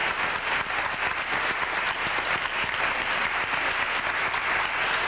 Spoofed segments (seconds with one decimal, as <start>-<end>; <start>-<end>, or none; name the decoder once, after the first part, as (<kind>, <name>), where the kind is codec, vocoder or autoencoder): none